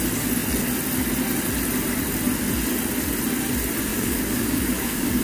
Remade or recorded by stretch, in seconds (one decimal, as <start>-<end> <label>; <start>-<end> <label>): 0.0-3.9 recorded; 3.9-5.2 remade